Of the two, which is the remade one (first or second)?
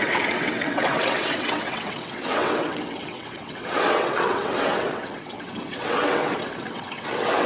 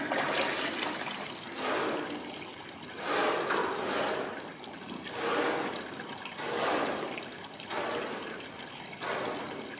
first